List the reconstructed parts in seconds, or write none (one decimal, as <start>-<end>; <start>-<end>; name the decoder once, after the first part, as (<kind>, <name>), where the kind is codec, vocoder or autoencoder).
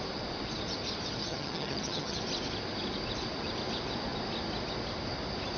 1.2-2.2 (vocoder, HiFi-GAN)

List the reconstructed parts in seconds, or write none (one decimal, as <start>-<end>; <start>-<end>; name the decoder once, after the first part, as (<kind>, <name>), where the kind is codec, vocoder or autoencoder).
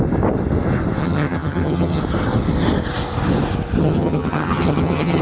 1.0-2.0 (vocoder, HiFi-GAN); 3.8-5.2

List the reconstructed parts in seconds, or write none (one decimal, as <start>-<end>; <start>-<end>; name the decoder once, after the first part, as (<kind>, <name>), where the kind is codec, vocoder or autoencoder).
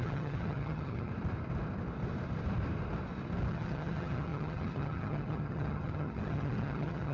0.0-1.1 (vocoder, HiFi-GAN); 3.5-7.1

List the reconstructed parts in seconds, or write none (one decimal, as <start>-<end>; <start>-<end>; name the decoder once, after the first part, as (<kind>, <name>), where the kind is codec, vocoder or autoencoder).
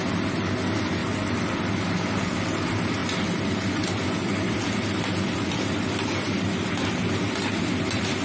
none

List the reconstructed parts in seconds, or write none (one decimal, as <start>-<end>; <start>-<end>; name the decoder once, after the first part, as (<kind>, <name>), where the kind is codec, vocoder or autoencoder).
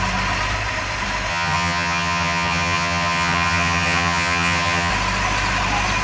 1.3-4.9 (vocoder, HiFi-GAN)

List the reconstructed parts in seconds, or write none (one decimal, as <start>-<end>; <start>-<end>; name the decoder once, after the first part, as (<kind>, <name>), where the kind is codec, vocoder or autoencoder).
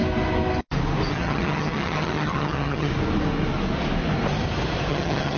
1.1-2.9 (vocoder, HiFi-GAN); 4.9-5.4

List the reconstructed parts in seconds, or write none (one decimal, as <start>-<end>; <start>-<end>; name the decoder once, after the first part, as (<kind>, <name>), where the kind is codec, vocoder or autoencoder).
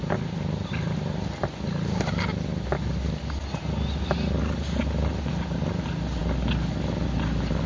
none